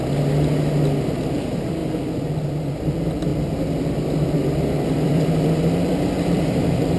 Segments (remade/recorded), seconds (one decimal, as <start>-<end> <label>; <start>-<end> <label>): 0.0-1.3 recorded; 1.3-3.3 remade; 3.3-4.5 recorded; 4.5-7.0 remade